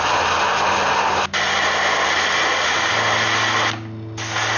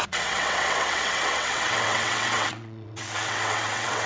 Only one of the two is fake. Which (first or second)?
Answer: second